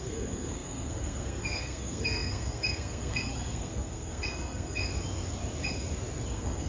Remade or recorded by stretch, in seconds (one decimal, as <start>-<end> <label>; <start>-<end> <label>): 0.0-4.8 remade; 4.8-6.3 recorded; 6.3-6.7 remade